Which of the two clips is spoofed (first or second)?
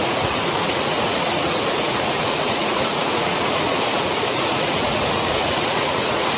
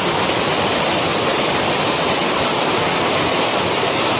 first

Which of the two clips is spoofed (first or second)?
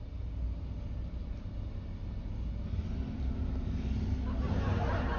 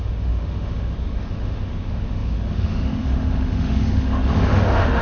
second